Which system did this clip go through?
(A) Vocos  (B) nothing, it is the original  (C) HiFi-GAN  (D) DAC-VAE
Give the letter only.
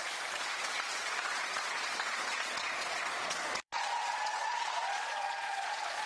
A